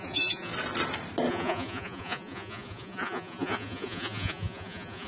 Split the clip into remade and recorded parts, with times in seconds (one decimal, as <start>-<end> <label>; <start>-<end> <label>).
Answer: 0.0-0.5 remade; 0.5-1.3 recorded; 1.3-5.1 remade